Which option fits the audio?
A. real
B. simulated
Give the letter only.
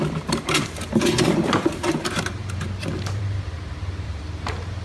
B